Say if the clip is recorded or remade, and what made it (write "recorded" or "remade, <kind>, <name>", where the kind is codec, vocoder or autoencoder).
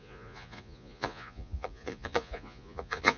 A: remade, vocoder, Vocos